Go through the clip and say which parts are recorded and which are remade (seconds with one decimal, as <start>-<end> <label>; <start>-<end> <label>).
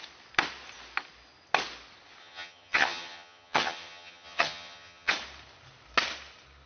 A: 0.0-2.2 recorded; 2.2-5.1 remade; 5.1-6.7 recorded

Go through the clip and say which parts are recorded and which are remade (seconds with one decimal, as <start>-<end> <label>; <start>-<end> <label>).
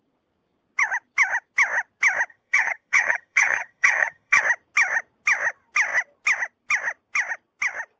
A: 0.0-2.3 recorded; 2.3-4.4 remade; 4.4-8.0 recorded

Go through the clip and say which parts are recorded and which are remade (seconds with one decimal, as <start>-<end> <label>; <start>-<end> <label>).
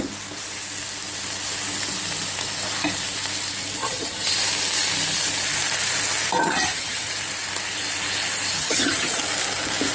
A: 0.0-3.8 recorded; 3.8-4.3 remade; 4.3-6.4 recorded; 6.4-7.1 remade; 7.1-8.6 recorded; 8.6-9.2 remade; 9.2-9.9 recorded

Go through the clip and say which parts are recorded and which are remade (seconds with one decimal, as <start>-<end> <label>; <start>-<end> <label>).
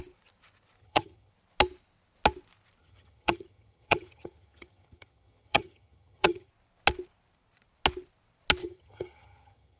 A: 0.0-0.8 recorded; 0.8-1.3 remade; 1.3-2.8 recorded; 2.8-6.5 remade; 6.5-8.6 recorded; 8.6-9.8 remade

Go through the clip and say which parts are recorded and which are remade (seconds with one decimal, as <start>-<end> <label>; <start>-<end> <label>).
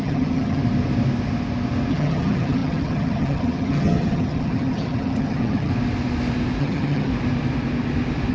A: 0.0-0.6 remade; 0.6-1.9 recorded; 1.9-5.7 remade; 5.7-6.6 recorded; 6.6-7.1 remade; 7.1-8.3 recorded